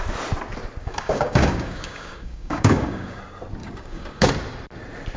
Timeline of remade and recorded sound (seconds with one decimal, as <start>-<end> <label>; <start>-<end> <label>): 0.0-0.8 recorded; 0.8-3.2 remade; 3.2-3.6 recorded; 3.6-4.3 remade; 4.3-5.2 recorded